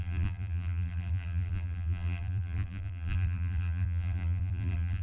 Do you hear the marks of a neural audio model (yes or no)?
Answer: yes